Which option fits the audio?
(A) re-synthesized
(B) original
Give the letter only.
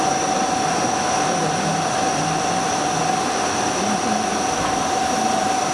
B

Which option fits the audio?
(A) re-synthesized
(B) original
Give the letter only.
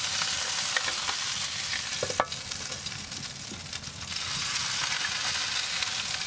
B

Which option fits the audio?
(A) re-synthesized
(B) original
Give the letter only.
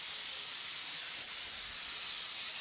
B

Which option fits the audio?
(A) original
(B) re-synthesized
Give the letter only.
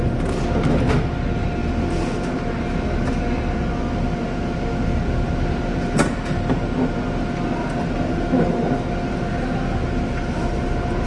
A